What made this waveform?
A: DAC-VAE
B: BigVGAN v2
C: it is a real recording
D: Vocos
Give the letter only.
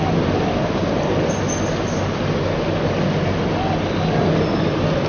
C